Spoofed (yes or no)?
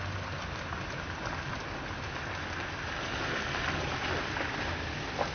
no